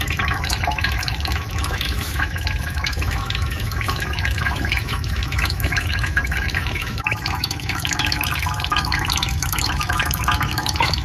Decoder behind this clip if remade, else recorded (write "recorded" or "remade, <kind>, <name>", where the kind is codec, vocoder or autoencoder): remade, autoencoder, DAC-VAE